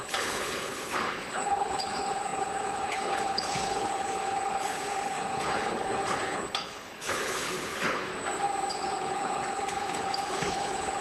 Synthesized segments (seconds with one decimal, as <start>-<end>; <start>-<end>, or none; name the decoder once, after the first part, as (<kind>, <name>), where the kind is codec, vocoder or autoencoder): 0.0-8.1 (codec, HILCodec); 8.7-11.0